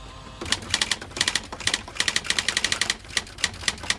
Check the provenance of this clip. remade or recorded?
remade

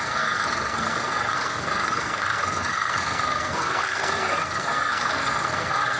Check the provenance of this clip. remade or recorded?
remade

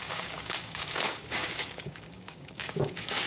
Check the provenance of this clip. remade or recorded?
remade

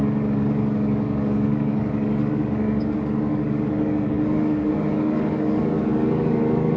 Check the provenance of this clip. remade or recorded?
remade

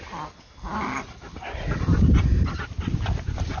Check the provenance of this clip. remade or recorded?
recorded